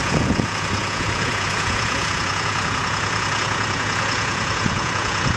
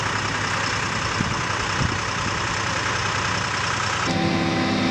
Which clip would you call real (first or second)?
second